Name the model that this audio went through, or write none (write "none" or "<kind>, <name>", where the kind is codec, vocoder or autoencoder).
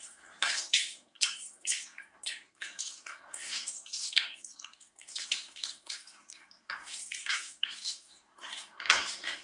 codec, SNAC